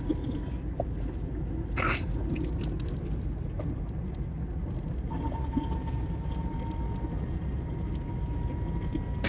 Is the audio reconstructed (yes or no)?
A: no